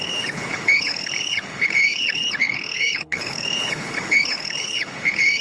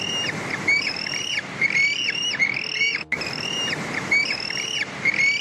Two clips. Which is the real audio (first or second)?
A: second